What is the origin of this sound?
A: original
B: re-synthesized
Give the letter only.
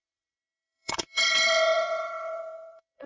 B